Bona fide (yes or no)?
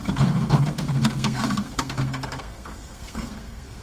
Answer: no